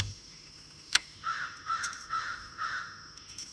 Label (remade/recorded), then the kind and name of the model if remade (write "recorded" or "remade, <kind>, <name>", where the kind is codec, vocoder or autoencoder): remade, autoencoder, DAC-VAE